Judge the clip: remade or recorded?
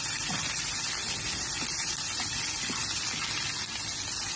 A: recorded